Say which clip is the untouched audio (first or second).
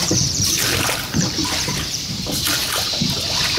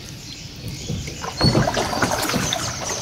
second